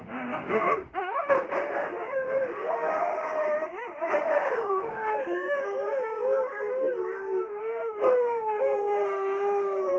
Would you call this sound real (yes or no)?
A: no